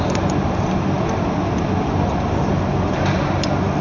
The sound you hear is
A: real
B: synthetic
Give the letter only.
A